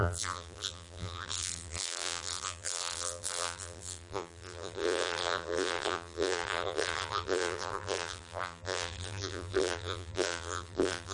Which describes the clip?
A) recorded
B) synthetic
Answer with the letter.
B